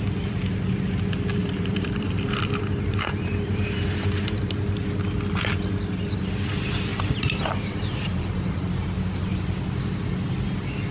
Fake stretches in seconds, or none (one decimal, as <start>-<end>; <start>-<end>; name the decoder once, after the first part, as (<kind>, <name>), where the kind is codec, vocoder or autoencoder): 1.4-4.5 (vocoder, BigVGAN v2); 6.9-8.7